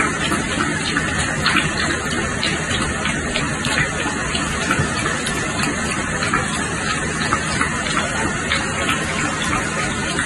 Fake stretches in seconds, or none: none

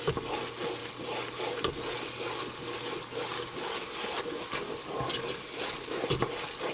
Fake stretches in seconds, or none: none

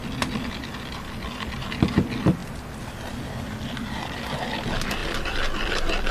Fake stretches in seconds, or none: none

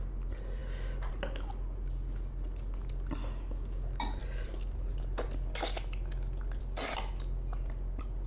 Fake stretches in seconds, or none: none

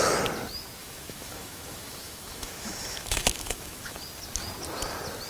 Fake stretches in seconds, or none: 0.8-4.0 (autoencoder, DAC-VAE)

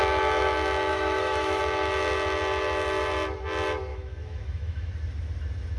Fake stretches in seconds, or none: 0.9-1.6 (autoencoder, DAC-VAE); 3.9-4.9

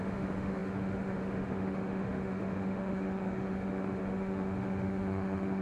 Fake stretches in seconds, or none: 0.0-5.6 (autoencoder, DAC-VAE)